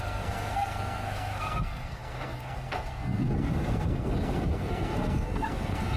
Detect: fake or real fake